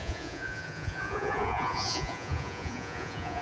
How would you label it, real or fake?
fake